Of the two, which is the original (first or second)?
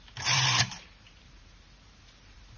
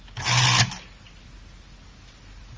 second